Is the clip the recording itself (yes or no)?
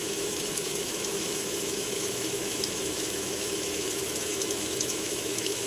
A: no